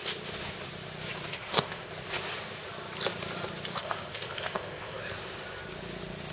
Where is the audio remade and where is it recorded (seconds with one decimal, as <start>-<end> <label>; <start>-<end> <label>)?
0.0-1.3 recorded; 1.3-1.9 remade; 1.9-3.8 recorded; 3.8-5.0 remade; 5.0-6.3 recorded